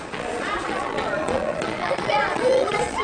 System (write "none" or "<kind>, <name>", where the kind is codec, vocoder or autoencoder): vocoder, Vocos